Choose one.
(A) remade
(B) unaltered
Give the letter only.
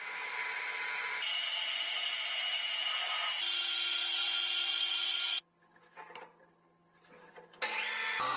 B